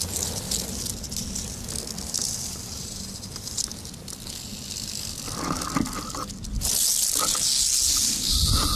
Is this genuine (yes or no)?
yes